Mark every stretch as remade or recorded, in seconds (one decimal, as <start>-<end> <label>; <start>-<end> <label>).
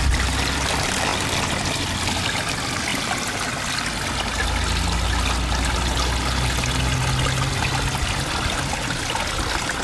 0.0-9.8 recorded